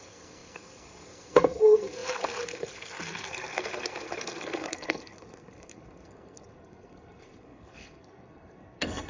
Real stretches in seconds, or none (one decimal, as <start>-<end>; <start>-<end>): none